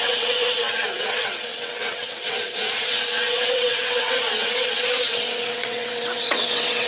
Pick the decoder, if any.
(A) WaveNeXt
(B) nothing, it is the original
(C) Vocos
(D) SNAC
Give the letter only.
A